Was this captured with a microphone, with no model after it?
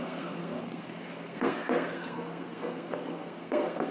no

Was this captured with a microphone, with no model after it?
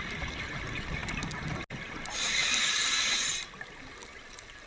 yes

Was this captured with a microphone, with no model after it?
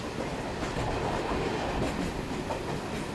yes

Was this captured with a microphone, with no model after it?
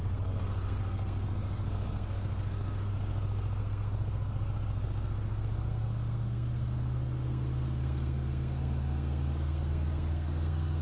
no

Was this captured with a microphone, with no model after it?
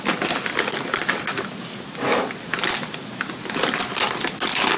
yes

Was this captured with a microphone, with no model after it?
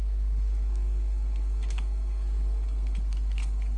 no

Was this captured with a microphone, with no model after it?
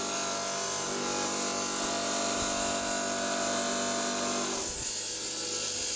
yes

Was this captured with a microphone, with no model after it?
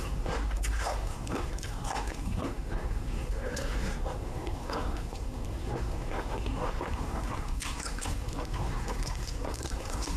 no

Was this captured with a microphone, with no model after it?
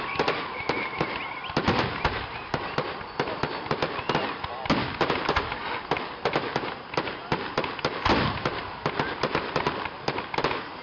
yes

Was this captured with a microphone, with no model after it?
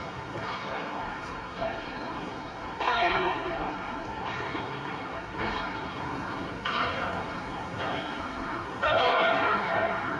no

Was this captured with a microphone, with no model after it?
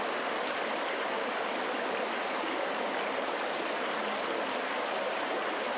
yes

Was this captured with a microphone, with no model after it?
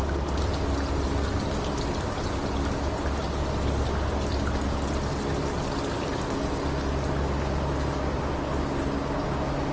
yes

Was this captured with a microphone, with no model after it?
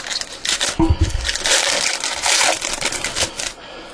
yes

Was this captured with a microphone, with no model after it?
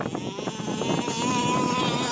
yes